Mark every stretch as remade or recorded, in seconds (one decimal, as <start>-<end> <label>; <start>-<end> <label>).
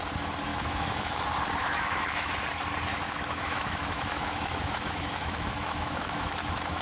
0.0-0.5 recorded; 0.5-1.2 remade; 1.2-1.6 recorded; 1.6-2.4 remade; 2.4-2.9 recorded; 2.9-6.8 remade